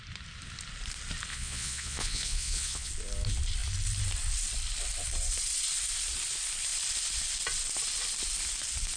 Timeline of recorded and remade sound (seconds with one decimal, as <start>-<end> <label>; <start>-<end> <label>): 0.0-1.3 recorded; 1.3-2.9 remade; 2.9-9.0 recorded